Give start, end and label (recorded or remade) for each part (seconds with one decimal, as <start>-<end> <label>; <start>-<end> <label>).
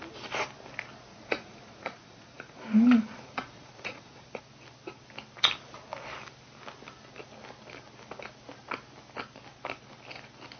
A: 0.0-1.1 recorded; 1.1-4.4 remade; 4.4-10.6 recorded